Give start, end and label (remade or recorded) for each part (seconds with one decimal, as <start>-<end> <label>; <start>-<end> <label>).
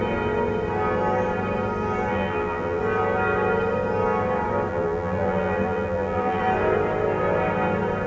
0.0-2.1 recorded; 2.1-2.8 remade; 2.8-4.7 recorded; 4.7-6.4 remade; 6.4-8.1 recorded